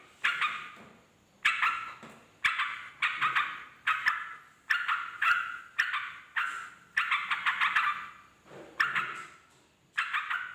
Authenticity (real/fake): real